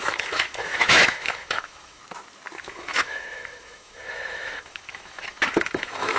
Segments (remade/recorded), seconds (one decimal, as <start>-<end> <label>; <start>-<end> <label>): 0.0-2.0 remade; 2.0-2.6 recorded; 2.6-6.2 remade